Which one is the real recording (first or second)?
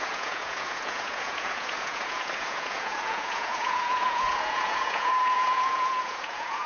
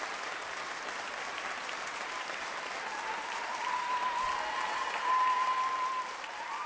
second